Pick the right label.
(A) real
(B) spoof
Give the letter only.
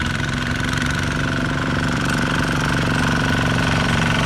B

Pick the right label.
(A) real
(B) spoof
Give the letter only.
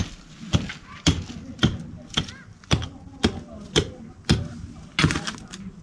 A